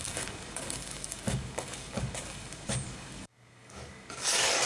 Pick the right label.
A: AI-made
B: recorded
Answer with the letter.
A